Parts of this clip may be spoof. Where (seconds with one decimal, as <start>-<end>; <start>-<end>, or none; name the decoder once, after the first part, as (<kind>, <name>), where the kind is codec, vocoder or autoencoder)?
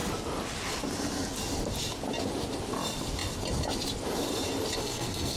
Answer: 4.8-5.4 (codec, SNAC)